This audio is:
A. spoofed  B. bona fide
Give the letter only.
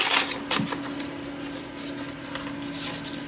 B